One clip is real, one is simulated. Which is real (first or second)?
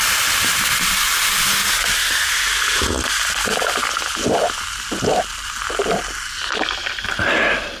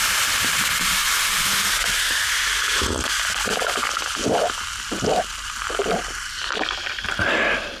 first